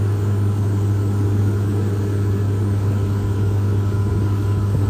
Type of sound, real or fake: fake